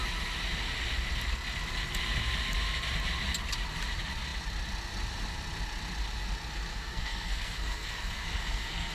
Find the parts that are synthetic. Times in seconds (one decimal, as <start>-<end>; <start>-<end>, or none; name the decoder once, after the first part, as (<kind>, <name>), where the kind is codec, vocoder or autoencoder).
6.7-8.9 (codec, SNAC)